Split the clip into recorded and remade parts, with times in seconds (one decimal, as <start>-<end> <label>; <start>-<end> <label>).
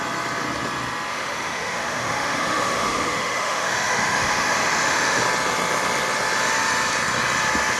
0.0-1.1 recorded; 1.1-5.2 remade; 5.2-7.8 recorded